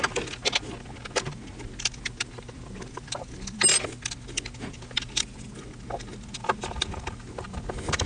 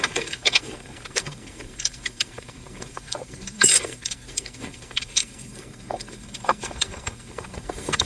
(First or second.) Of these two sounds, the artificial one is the second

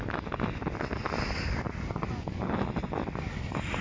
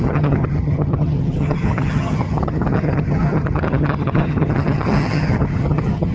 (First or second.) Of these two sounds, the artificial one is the second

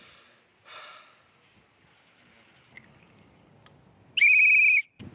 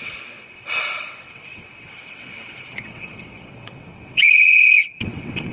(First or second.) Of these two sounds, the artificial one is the second